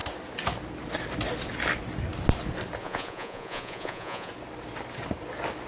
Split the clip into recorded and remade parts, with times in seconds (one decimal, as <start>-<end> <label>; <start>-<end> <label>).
0.0-2.8 recorded; 2.8-4.3 remade; 4.3-5.7 recorded